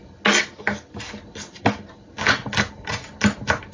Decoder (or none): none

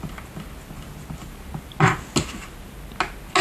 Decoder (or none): none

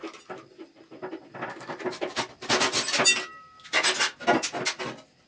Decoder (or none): none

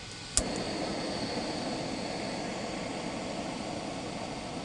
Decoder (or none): none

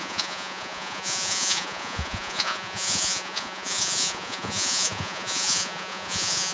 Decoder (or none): vocoder, Vocos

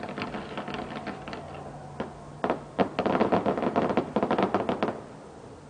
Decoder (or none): none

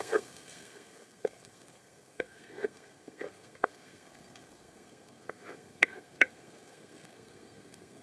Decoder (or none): codec, SNAC